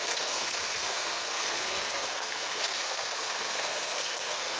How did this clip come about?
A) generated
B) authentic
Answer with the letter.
A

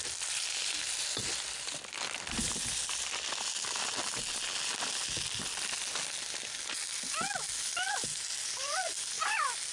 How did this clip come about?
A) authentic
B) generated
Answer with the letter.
A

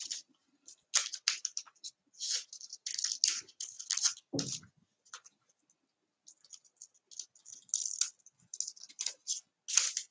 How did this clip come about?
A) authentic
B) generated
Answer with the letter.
A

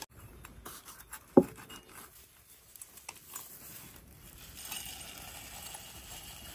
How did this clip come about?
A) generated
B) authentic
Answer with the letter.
B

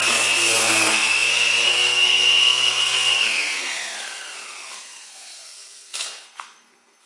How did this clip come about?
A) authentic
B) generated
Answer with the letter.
B